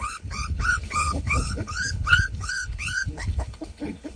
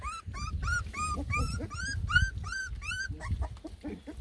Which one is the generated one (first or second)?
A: first